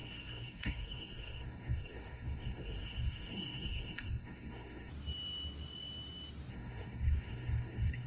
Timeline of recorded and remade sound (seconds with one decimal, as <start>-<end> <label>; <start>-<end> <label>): 0.0-4.9 remade; 4.9-6.5 recorded; 6.5-8.1 remade